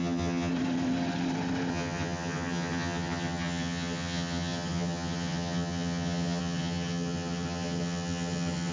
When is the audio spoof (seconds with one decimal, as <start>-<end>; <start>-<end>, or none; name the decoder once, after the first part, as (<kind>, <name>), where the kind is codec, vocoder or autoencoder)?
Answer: 0.0-0.5 (vocoder, HiFi-GAN); 1.7-8.7